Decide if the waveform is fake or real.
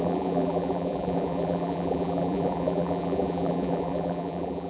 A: fake